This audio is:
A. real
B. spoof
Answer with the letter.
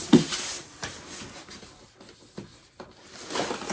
A